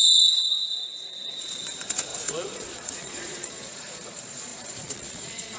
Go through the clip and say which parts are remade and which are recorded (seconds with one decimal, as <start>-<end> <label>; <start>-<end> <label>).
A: 0.0-5.6 remade